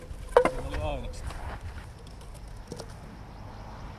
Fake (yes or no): no